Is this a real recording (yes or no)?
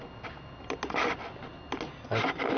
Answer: yes